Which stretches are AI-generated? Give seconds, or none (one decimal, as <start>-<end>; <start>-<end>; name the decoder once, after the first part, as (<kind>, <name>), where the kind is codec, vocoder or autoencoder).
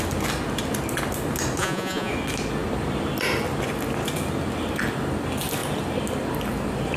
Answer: 1.6-2.1 (vocoder, Vocos)